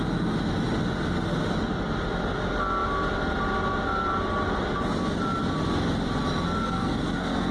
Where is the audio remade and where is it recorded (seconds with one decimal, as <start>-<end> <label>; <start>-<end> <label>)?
0.0-6.6 recorded; 6.6-7.5 remade